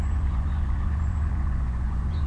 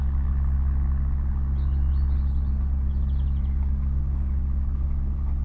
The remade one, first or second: first